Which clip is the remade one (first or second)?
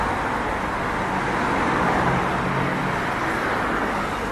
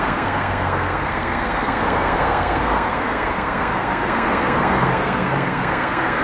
second